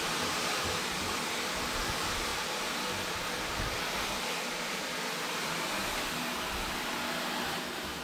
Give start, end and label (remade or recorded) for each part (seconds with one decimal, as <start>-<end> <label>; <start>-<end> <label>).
0.0-5.8 remade; 5.8-8.0 recorded